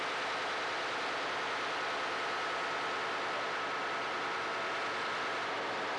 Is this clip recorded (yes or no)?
yes